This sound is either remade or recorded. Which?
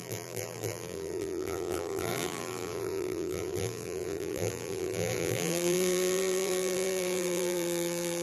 remade